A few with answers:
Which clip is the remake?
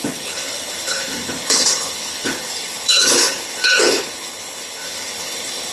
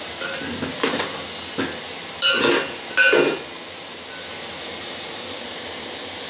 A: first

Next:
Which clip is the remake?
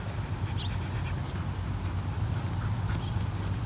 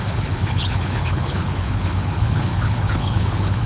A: second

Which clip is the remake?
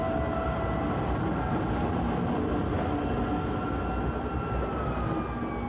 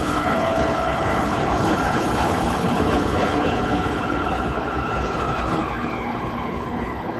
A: second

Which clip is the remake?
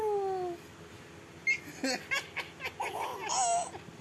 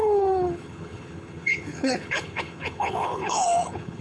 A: second